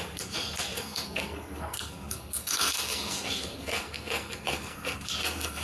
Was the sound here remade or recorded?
remade